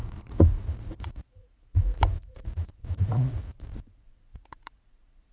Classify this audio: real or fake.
fake